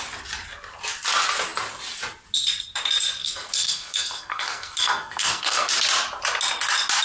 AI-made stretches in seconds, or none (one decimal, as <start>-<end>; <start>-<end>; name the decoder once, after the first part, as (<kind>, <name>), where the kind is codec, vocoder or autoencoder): 3.2-5.7 (codec, SNAC)